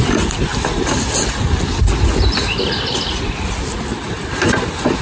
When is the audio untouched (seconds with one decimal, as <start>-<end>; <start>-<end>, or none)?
0.5-3.5